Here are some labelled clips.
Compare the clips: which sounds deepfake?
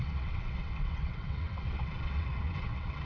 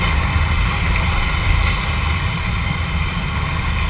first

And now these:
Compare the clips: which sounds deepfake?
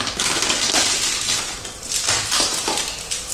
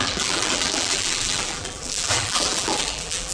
second